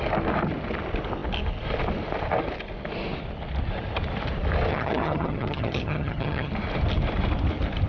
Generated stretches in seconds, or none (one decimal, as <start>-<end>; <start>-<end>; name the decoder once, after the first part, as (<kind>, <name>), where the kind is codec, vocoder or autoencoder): 4.7-6.5 (vocoder, HiFi-GAN)